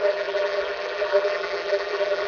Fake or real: fake